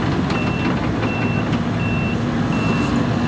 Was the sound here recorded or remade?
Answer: recorded